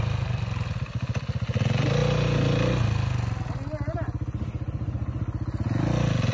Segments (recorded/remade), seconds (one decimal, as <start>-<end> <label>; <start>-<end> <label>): 0.0-6.3 recorded